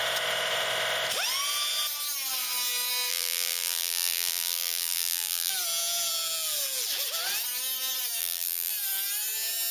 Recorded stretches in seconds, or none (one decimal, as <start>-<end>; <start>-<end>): 0.0-3.1; 5.5-8.2; 8.7-9.7